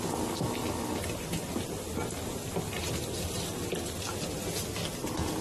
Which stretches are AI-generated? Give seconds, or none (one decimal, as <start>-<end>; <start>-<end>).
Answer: none